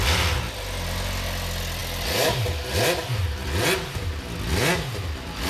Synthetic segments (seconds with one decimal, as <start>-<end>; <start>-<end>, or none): none